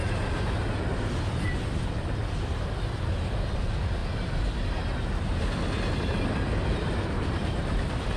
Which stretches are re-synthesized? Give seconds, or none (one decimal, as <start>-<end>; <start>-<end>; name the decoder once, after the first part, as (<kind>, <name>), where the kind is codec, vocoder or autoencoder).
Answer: 3.3-4.0 (vocoder, BigVGAN v2); 6.6-8.2